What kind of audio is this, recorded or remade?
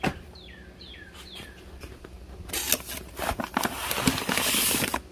recorded